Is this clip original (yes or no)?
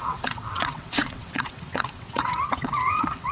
no